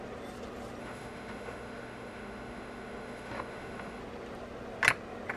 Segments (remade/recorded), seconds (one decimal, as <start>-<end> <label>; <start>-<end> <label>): 0.0-0.8 recorded; 0.8-4.0 remade; 4.0-5.4 recorded